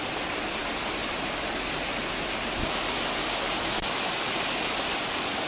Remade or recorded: recorded